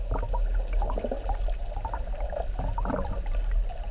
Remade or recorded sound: recorded